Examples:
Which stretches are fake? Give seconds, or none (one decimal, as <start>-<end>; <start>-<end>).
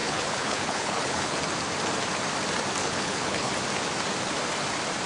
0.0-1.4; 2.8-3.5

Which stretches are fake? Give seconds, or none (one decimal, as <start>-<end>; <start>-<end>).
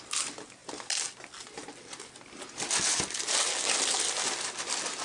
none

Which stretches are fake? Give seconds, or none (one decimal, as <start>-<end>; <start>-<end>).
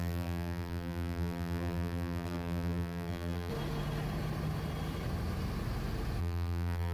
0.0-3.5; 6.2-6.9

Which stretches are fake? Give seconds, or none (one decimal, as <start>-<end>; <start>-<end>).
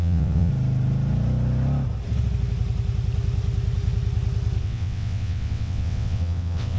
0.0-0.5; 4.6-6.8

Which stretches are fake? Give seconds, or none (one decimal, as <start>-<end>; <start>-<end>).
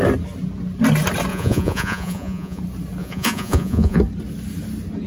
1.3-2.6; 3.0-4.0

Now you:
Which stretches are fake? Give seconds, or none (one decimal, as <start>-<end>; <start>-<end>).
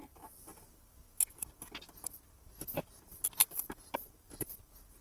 3.4-4.0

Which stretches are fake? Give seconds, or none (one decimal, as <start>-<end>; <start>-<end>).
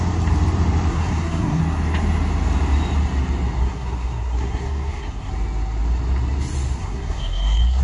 0.9-1.6; 3.6-5.3; 6.8-7.8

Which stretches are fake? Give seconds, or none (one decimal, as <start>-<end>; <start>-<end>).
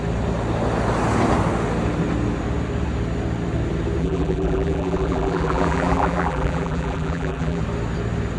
4.0-7.6